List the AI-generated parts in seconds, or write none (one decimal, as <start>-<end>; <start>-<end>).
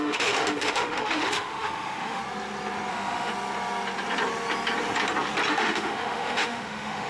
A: 0.0-2.2; 2.9-3.3; 5.5-7.1